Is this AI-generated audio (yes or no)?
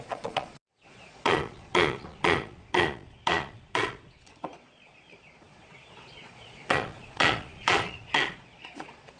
yes